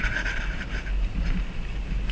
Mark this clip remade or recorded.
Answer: recorded